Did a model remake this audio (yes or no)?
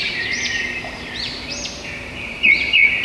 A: yes